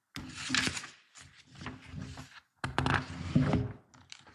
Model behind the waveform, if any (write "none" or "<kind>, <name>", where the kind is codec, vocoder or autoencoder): none